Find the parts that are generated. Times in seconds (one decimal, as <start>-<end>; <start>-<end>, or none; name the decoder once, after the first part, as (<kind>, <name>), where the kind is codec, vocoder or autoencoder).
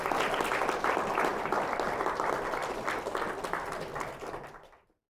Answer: none